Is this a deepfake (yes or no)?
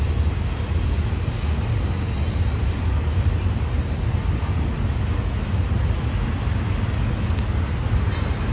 no